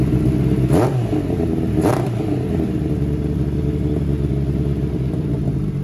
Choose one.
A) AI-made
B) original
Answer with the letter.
B